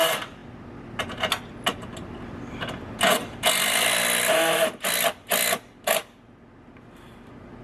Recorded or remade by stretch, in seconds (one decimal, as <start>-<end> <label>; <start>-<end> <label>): 0.0-7.6 recorded

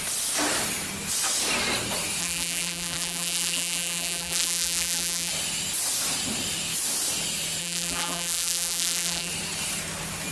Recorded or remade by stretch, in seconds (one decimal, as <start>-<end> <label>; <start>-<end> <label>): 0.0-2.2 recorded; 2.2-5.3 remade; 5.3-7.6 recorded; 7.6-9.3 remade; 9.3-10.3 recorded

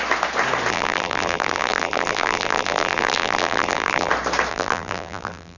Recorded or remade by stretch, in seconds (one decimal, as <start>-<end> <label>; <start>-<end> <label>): 0.0-0.7 recorded; 0.7-4.1 remade; 4.1-4.5 recorded; 4.5-5.6 remade